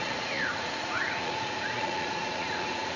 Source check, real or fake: fake